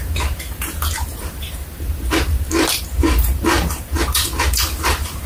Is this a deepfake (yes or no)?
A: yes